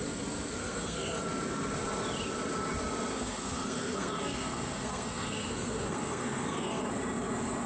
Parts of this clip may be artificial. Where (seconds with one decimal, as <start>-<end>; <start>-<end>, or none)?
0.6-1.2; 3.1-6.9